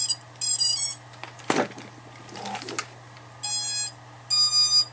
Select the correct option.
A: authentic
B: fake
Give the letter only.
A